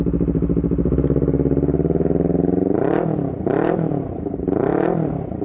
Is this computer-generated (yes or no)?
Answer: yes